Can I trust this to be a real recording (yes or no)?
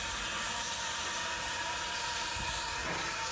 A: yes